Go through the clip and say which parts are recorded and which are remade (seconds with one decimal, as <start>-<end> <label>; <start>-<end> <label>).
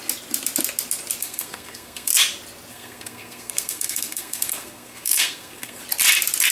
0.0-1.2 recorded; 1.2-2.1 remade; 2.1-2.7 recorded; 2.7-5.8 remade; 5.8-6.5 recorded